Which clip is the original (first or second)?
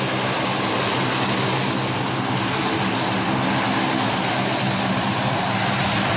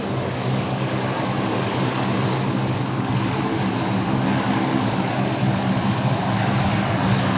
first